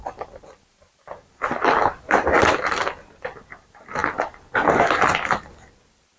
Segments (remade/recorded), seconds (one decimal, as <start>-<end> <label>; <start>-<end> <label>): 0.0-6.2 recorded